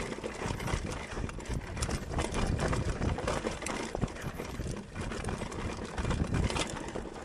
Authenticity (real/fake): real